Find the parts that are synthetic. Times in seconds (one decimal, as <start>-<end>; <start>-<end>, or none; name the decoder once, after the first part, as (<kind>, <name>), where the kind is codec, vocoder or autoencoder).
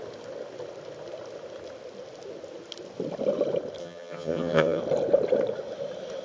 3.8-4.8 (vocoder, HiFi-GAN)